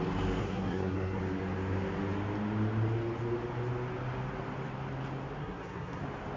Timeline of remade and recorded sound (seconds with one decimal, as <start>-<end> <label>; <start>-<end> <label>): 0.0-0.4 recorded; 0.4-1.2 remade; 1.2-5.4 recorded; 5.4-6.0 remade; 6.0-6.4 recorded